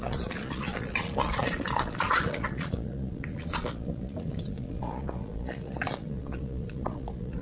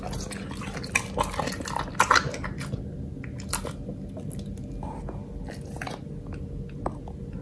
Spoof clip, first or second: first